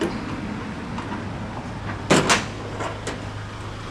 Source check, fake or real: real